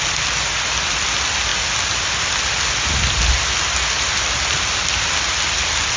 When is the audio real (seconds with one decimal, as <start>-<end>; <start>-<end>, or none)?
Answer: 0.0-6.0